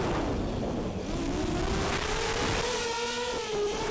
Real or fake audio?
real